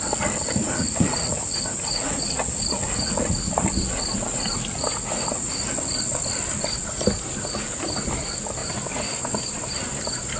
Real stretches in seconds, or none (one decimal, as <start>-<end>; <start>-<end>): 0.0-0.6; 5.5-10.4